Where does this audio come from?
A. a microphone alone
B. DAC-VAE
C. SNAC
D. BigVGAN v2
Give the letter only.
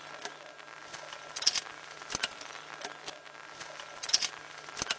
A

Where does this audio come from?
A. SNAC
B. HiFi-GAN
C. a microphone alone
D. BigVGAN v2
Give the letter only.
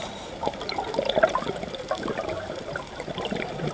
D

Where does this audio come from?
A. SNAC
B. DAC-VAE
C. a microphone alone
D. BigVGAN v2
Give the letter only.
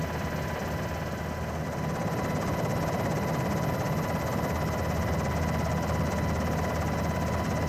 C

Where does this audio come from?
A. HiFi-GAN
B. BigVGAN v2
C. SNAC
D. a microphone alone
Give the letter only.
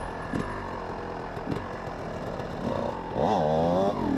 D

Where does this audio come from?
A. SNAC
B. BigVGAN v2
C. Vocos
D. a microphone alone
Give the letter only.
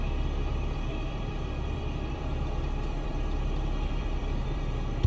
B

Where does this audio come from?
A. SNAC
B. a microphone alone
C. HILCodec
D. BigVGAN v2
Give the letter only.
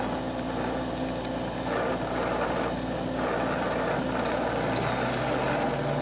B